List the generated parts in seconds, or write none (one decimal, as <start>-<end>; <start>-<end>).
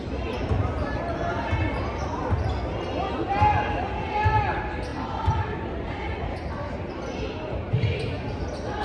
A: 4.9-6.5